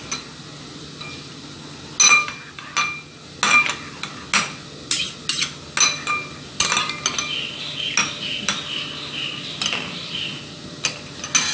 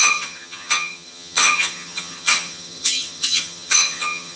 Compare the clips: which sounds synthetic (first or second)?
second